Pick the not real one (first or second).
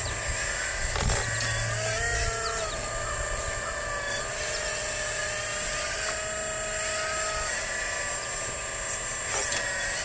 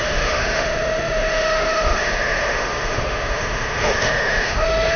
second